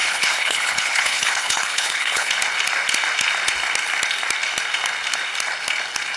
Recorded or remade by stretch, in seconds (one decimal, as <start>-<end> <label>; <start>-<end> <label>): 0.0-2.3 remade; 2.3-6.2 recorded